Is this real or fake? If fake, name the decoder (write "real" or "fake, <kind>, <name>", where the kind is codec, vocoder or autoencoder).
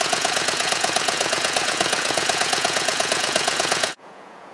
fake, vocoder, Vocos